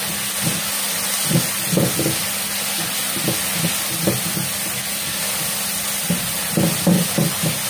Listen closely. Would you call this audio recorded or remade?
recorded